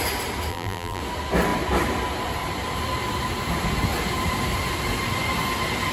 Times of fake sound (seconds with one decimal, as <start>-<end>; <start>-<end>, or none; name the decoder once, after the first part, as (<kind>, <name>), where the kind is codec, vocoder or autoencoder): 0.5-1.0 (vocoder, BigVGAN v2)